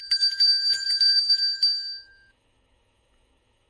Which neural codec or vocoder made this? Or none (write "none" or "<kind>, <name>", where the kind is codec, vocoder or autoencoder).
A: autoencoder, DAC-VAE